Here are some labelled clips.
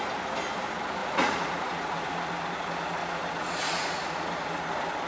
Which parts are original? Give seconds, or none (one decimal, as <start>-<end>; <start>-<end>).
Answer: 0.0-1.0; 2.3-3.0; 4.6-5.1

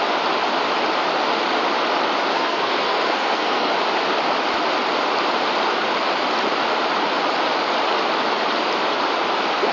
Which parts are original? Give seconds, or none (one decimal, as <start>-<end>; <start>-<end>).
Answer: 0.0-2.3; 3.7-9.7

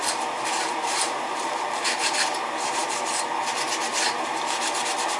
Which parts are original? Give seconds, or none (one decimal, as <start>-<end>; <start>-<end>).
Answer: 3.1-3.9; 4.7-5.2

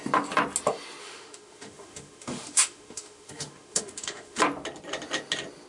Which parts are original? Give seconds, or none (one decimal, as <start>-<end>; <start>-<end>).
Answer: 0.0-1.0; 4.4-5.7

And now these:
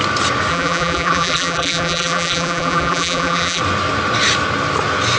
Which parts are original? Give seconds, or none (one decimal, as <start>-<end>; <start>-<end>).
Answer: 0.0-0.5; 3.6-5.2

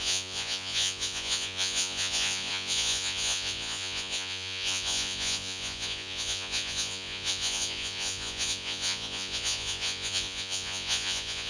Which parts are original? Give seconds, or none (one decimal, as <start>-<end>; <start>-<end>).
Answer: none

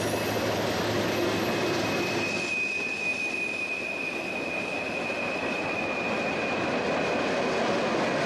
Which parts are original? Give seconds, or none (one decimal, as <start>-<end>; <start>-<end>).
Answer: 0.0-8.3

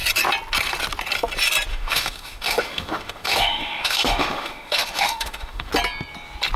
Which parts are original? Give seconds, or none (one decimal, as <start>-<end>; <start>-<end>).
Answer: 0.0-1.7; 5.7-6.6